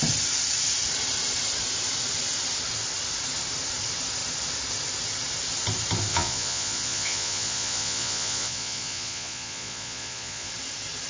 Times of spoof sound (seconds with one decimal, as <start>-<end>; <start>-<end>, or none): 6.1-10.5